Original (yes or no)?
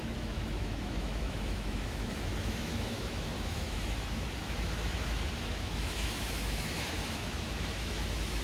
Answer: no